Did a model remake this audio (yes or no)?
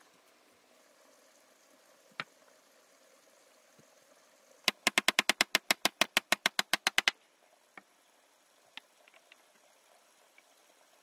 no